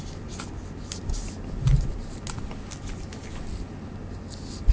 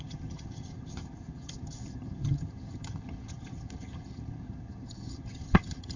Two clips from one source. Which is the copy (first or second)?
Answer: second